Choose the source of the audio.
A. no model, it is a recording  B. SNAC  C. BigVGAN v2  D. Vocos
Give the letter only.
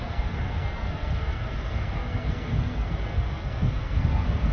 B